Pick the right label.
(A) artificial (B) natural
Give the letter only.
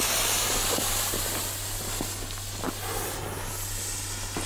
B